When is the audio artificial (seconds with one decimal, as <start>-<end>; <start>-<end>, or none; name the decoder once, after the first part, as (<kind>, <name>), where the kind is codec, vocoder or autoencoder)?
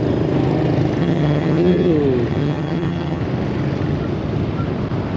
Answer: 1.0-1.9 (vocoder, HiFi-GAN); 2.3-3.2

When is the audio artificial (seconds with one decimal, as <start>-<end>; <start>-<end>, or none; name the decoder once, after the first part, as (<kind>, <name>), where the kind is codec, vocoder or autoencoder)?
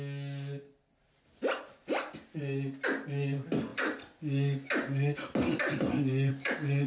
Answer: none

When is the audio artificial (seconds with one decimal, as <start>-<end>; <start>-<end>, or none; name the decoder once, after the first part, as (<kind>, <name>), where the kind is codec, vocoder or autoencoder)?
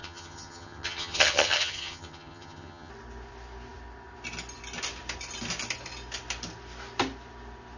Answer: 0.0-2.9 (vocoder, HiFi-GAN)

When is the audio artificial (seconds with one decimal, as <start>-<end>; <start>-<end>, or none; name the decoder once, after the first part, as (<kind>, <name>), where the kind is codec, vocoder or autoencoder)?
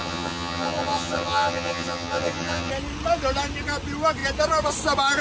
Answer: 0.0-2.7 (vocoder, HiFi-GAN)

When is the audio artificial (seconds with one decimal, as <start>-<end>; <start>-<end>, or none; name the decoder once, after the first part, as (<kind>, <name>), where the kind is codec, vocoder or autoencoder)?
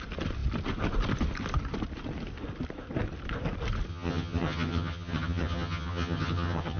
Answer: 3.9-6.8 (vocoder, HiFi-GAN)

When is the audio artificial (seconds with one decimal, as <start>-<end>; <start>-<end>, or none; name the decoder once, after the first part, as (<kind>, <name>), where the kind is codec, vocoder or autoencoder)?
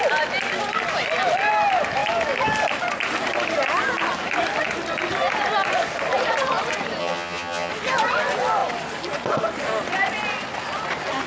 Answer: 7.0-7.7 (vocoder, HiFi-GAN)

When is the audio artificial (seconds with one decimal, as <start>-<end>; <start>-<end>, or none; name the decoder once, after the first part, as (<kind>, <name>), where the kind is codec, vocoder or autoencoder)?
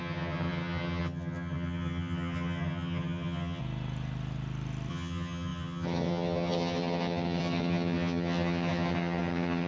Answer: 0.0-3.6 (vocoder, HiFi-GAN); 4.9-9.7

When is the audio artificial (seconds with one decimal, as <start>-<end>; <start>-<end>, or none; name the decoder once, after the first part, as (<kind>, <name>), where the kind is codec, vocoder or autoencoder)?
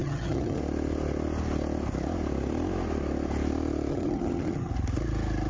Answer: 0.0-0.6 (vocoder, HiFi-GAN); 3.9-4.7